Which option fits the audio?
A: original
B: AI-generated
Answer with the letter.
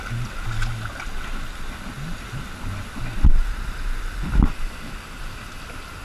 A